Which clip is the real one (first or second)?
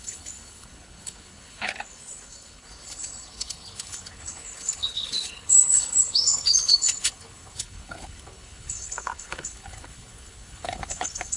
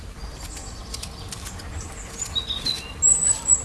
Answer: second